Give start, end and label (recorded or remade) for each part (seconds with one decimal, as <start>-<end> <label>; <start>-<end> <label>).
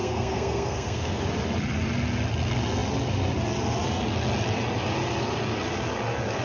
0.0-1.2 remade; 1.2-6.4 recorded